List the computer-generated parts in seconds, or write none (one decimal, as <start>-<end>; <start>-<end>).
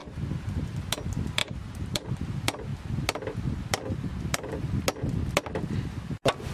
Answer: 0.0-0.7; 1.4-2.1